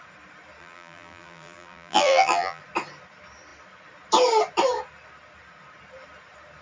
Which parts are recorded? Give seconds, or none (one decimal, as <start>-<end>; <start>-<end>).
0.0-0.6; 2.6-6.6